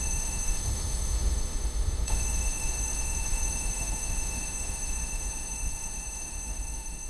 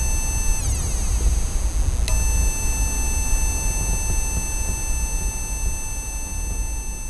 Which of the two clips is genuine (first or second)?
second